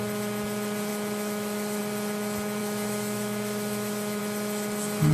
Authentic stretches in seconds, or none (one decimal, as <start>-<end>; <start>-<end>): 0.0-0.9; 1.8-2.6; 4.2-5.1